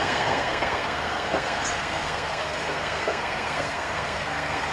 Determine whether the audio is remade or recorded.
remade